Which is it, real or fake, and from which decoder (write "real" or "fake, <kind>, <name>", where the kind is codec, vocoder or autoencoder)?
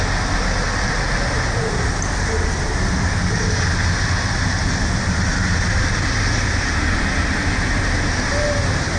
real